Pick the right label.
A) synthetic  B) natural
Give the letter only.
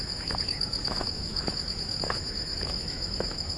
A